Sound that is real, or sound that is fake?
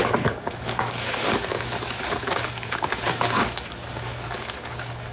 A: fake